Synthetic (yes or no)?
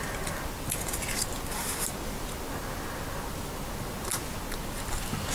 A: no